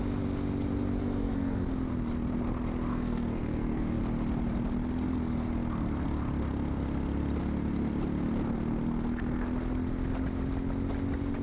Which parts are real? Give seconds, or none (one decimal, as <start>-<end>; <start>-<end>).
0.0-1.0; 1.7-2.9; 4.0-11.4